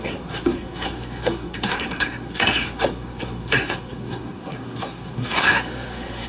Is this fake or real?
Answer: fake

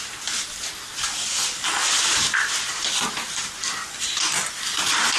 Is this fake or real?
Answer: real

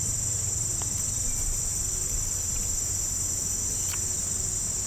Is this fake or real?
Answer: real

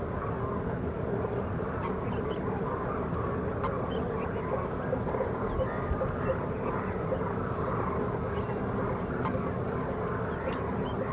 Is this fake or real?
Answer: real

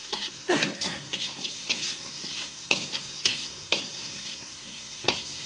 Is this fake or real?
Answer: fake